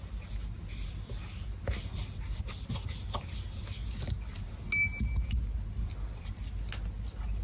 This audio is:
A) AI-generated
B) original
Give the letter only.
B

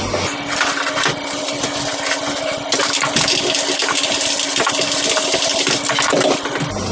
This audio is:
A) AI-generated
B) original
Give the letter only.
B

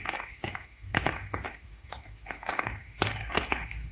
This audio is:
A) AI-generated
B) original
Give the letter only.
A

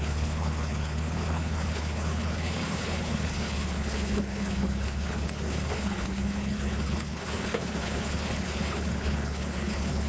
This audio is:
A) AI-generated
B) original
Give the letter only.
A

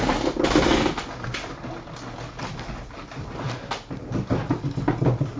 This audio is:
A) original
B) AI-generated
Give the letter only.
A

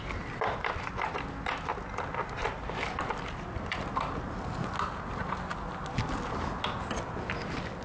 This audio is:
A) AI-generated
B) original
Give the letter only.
B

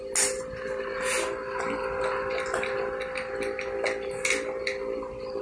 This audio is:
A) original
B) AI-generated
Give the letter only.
A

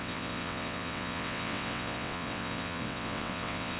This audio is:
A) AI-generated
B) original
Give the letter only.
A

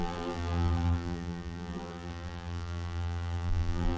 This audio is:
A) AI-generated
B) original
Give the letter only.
A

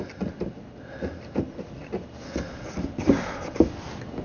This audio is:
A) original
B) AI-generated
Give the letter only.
A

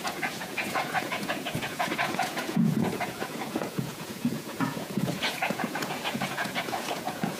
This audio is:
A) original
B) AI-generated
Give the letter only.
B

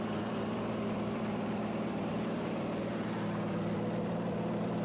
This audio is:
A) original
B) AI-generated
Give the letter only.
B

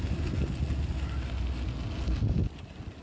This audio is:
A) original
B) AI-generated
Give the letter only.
A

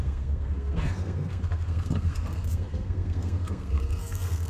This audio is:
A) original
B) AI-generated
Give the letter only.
B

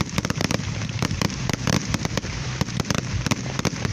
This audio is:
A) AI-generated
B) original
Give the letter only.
A